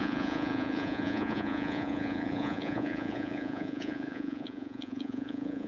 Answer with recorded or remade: remade